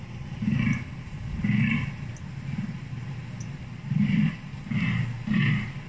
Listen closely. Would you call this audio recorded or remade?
recorded